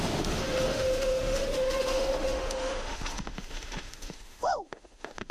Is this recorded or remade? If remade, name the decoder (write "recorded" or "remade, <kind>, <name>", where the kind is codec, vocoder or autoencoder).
remade, autoencoder, DAC-VAE